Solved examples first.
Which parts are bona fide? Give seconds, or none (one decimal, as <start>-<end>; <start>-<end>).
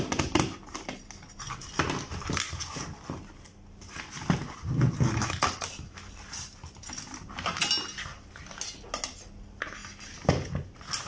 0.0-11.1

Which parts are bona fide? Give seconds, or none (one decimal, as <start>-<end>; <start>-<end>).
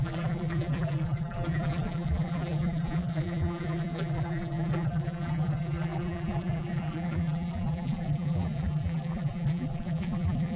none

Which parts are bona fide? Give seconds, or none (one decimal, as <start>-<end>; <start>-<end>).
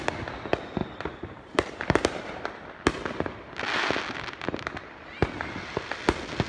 0.0-0.8; 2.4-6.5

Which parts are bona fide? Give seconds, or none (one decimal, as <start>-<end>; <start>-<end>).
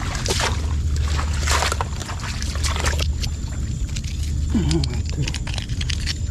0.0-6.3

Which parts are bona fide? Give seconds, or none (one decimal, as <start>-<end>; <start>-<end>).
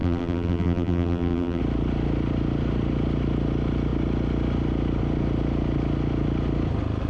1.6-7.1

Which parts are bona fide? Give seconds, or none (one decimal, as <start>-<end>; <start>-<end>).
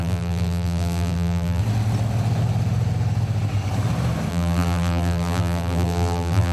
1.6-4.3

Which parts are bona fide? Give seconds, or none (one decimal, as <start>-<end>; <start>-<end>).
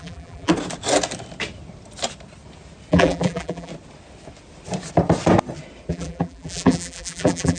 0.5-2.9; 3.7-5.9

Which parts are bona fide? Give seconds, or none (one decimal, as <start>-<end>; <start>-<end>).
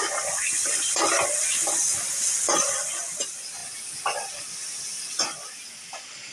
0.0-6.3